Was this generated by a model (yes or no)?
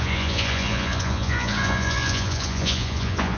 yes